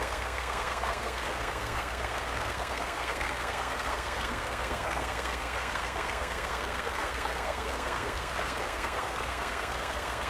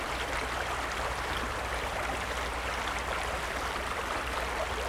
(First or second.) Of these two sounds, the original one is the second